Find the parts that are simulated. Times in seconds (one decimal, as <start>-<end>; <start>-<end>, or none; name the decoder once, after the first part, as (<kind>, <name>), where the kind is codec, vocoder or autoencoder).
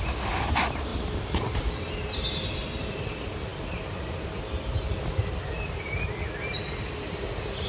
0.9-1.7 (vocoder, BigVGAN v2)